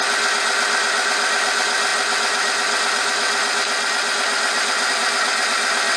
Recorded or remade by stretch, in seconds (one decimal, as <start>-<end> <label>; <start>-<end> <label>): 0.0-6.0 recorded